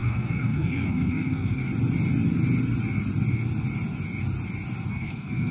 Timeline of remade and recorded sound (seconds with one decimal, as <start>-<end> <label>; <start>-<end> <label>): 0.0-1.6 remade; 1.6-4.9 recorded; 4.9-5.5 remade